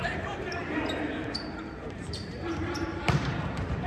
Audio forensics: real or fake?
fake